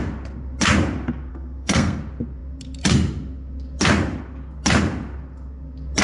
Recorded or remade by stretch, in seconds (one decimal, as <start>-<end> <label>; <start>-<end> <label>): 0.0-1.3 recorded; 1.3-2.0 remade; 2.0-6.0 recorded